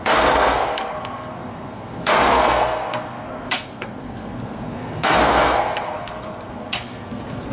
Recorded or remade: remade